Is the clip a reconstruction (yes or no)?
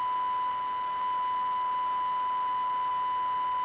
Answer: no